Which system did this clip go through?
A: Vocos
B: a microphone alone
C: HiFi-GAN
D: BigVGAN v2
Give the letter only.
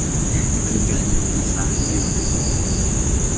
B